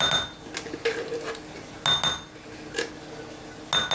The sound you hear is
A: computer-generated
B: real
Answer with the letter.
B